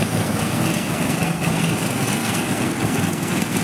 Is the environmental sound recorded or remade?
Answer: remade